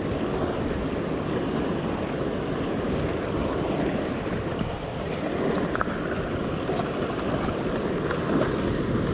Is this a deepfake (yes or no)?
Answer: no